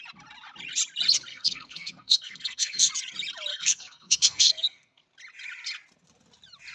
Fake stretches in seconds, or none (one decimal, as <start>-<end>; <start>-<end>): 1.3-2.9; 3.5-5.0